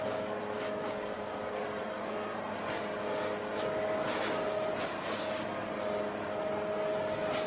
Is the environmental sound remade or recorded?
recorded